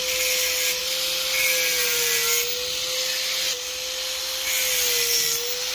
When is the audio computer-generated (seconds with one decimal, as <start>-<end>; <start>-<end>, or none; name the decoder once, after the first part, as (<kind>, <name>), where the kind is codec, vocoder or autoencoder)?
none